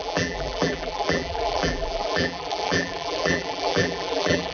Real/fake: fake